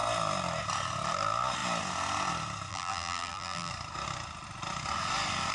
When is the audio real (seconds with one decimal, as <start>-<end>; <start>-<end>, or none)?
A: 0.0-2.7; 3.7-5.5